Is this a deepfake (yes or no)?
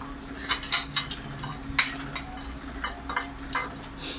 no